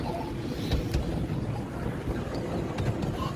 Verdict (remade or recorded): recorded